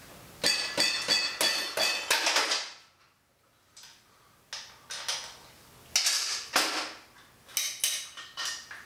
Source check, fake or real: real